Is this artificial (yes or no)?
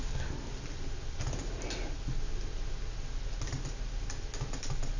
no